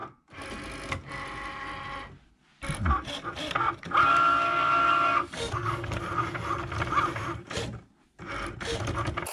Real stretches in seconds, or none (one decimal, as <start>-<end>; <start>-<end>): 0.0-4.0; 6.0-9.3